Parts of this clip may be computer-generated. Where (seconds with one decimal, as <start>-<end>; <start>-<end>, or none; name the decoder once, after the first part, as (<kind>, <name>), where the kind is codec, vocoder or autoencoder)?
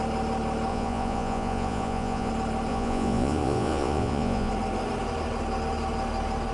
0.7-2.3 (vocoder, Vocos); 2.7-4.5